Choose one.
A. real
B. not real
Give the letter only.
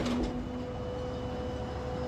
A